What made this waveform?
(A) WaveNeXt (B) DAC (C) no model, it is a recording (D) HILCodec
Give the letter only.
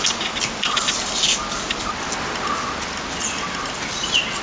C